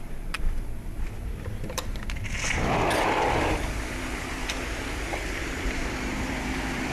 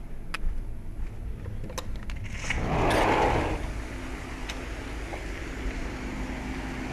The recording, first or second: second